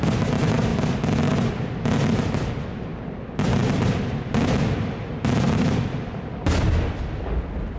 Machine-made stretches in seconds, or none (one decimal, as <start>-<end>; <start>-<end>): none